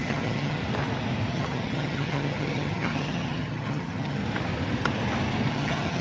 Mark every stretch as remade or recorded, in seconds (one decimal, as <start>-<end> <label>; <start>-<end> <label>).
0.0-0.6 remade; 0.6-1.3 recorded; 1.3-4.2 remade; 4.2-5.5 recorded; 5.5-6.0 remade